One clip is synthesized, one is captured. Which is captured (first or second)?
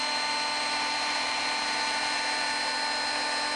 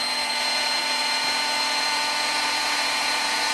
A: first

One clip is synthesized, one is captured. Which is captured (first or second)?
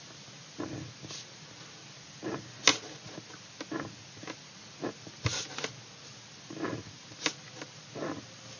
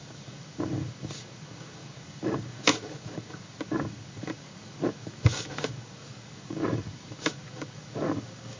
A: first